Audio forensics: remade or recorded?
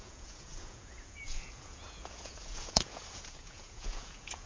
remade